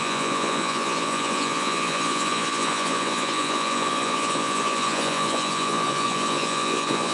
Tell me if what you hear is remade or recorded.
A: remade